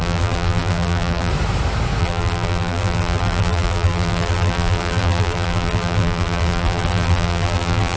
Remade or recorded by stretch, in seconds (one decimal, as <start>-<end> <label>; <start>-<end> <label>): 0.0-1.3 remade; 1.3-2.0 recorded; 2.0-8.0 remade